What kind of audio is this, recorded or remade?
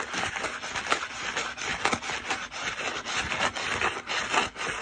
recorded